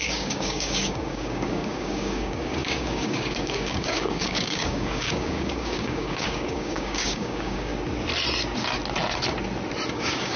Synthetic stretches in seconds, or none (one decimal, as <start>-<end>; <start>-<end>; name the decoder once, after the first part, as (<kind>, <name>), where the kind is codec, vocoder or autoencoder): 0.0-7.7 (codec, DAC); 9.9-10.4